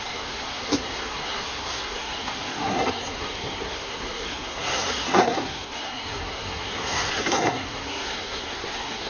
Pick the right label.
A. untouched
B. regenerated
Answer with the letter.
B